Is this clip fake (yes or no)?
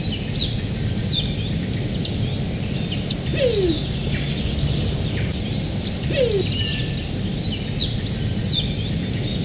no